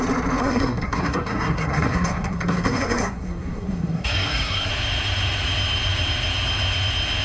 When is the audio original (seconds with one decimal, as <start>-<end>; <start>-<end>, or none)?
0.0-0.4; 4.7-7.2